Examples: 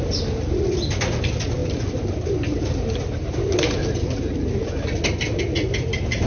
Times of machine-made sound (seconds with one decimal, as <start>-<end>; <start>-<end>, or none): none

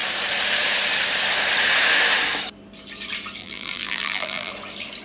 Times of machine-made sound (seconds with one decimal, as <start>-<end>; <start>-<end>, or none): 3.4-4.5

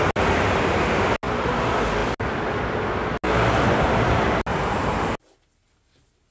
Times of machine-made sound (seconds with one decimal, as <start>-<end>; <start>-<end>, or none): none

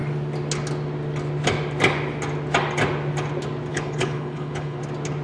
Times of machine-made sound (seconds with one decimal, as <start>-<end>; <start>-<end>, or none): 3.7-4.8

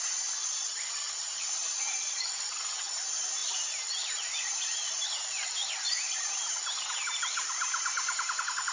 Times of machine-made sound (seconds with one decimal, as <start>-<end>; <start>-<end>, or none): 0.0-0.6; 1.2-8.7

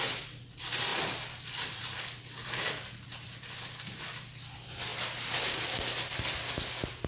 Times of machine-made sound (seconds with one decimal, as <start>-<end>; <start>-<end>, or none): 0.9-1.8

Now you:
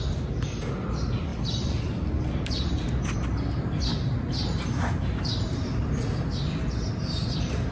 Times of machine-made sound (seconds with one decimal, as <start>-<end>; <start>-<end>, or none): none

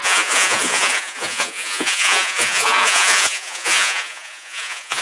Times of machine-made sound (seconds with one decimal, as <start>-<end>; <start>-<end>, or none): 0.0-5.0